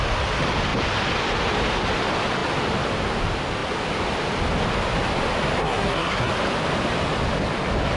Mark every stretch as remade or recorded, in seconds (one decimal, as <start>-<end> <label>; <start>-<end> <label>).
0.0-5.6 recorded; 5.6-6.3 remade; 6.3-8.0 recorded